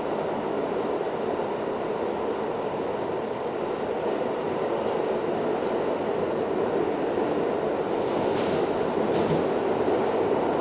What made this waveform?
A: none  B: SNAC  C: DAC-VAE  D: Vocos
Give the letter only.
A